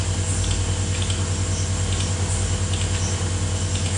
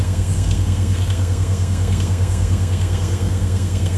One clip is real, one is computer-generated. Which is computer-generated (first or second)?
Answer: second